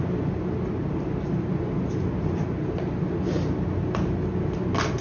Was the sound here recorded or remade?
recorded